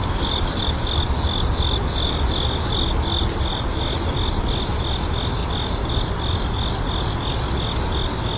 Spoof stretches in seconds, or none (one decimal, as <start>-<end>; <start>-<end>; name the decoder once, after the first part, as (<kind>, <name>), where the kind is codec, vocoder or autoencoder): 0.0-0.6 (vocoder, BigVGAN v2); 3.5-4.7; 5.4-6.7

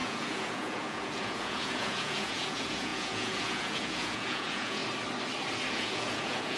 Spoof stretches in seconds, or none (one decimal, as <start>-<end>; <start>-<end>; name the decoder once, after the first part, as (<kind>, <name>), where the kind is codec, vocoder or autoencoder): 0.0-4.8 (vocoder, Vocos); 5.7-6.6

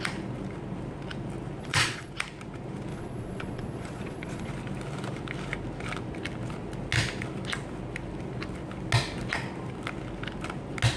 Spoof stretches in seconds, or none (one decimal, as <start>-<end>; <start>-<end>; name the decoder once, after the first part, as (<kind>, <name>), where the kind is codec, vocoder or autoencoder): 1.6-2.1 (vocoder, Vocos); 2.9-4.5

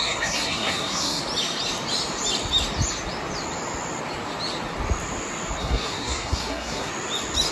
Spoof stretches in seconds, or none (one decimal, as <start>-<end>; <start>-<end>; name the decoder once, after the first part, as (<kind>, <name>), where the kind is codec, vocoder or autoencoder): 0.0-1.2 (codec, SNAC); 5.6-6.9